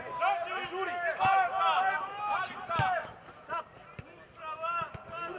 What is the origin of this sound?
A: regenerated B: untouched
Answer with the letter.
B